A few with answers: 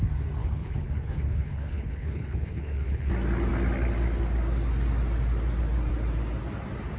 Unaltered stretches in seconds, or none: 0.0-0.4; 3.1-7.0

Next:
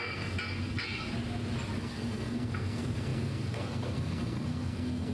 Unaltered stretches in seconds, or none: 1.0-1.8

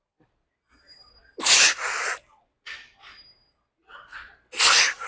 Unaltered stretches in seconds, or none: 0.0-5.1